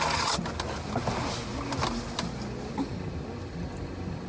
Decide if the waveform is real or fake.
real